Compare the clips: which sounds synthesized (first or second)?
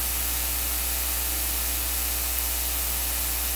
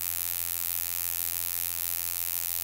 second